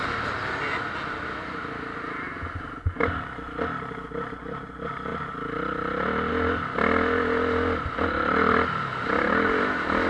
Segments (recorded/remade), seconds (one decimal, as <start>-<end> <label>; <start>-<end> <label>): 0.0-10.1 recorded